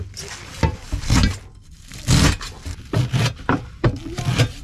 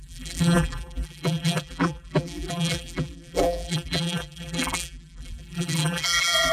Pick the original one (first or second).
first